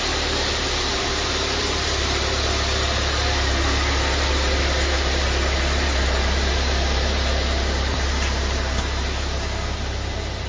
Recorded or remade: remade